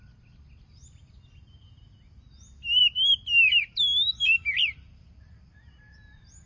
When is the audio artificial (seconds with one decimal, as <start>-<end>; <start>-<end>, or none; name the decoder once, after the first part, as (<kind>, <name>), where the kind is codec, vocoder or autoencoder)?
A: 4.1-5.6 (vocoder, BigVGAN v2)